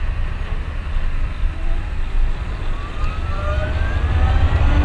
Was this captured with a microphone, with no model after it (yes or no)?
yes